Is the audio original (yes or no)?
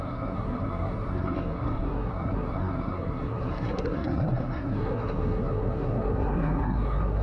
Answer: no